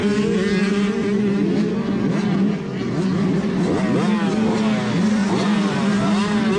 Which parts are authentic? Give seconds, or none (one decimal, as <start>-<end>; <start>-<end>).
0.0-5.2; 5.7-6.6

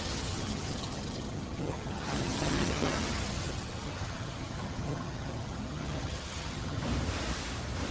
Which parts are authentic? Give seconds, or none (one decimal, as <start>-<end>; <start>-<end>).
6.8-7.9

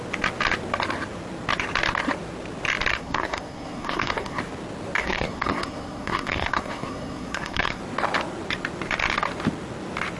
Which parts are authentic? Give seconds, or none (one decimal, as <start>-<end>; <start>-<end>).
0.0-2.9; 4.4-5.0; 7.8-10.2

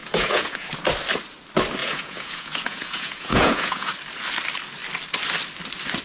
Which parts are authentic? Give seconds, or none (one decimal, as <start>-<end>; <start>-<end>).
0.7-1.8; 3.9-6.0